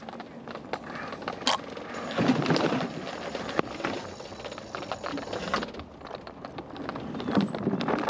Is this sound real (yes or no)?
yes